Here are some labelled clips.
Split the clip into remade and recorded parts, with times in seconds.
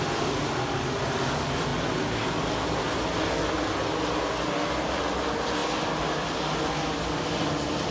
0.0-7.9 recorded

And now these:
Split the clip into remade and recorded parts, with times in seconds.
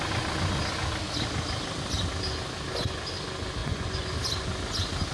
0.0-3.6 recorded; 3.6-4.1 remade; 4.1-5.1 recorded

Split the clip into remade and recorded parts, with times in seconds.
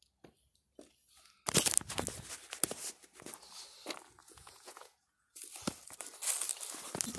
0.0-4.2 recorded; 4.2-5.4 remade; 5.4-7.2 recorded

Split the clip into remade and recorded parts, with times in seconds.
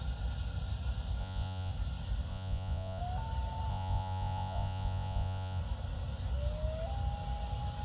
0.0-1.2 recorded; 1.2-1.7 remade; 1.7-2.3 recorded; 2.3-3.0 remade; 3.0-3.7 recorded; 3.7-5.6 remade; 5.6-7.8 recorded